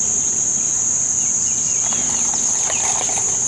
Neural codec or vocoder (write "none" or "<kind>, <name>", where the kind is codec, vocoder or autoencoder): none